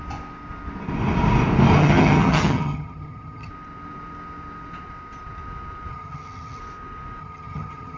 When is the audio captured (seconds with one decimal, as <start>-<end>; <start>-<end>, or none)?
0.0-1.8; 3.5-5.9; 6.6-7.2